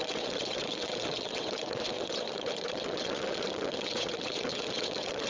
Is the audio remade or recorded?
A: remade